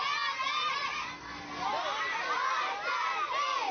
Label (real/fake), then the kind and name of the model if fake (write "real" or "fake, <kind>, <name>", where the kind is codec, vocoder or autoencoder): real